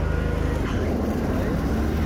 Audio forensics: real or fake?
real